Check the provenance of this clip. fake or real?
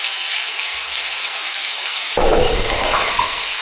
fake